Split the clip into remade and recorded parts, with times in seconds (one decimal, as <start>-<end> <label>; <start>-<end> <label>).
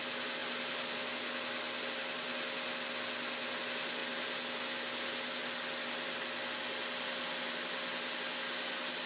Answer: 0.0-9.1 recorded